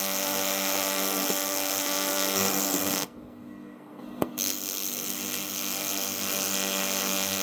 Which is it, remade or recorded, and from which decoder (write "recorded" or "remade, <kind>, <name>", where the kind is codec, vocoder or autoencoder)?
remade, codec, SNAC